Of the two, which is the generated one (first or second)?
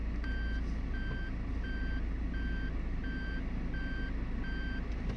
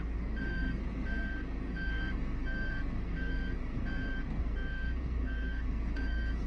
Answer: second